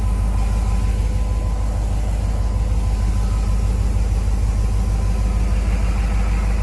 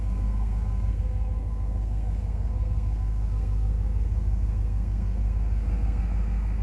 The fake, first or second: second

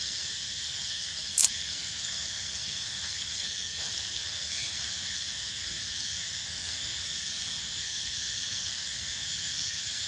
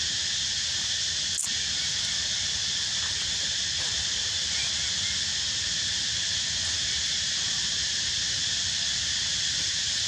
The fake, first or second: first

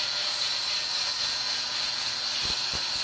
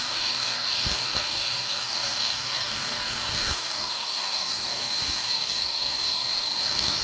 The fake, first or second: second